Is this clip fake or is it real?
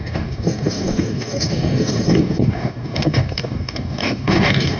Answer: fake